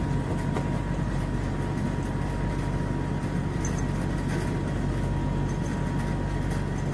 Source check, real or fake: real